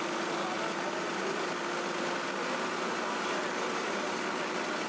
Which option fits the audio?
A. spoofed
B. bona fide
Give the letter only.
B